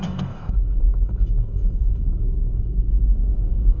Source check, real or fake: fake